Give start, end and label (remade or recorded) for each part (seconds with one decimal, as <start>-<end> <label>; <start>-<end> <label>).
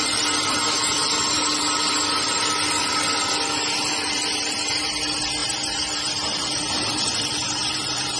0.0-5.4 recorded; 5.4-8.2 remade